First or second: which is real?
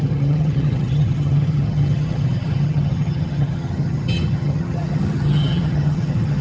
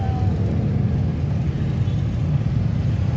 second